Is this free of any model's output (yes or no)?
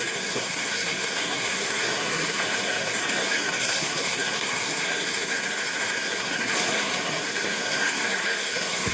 no